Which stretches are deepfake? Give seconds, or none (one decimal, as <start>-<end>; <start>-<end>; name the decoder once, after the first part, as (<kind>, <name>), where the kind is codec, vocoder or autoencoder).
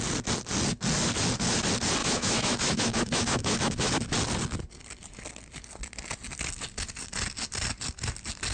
2.0-3.9 (autoencoder, DAC-VAE)